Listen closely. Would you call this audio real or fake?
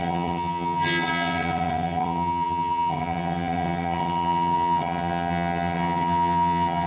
fake